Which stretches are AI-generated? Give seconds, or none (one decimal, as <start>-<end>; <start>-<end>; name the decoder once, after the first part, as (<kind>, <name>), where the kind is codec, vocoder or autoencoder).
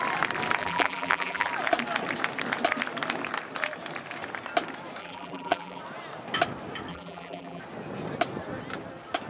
0.6-1.5 (vocoder, BigVGAN v2); 5.0-5.8; 6.9-7.6